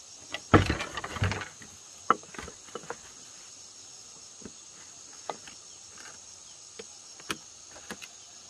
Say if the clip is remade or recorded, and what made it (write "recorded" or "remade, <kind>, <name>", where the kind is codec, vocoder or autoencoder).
recorded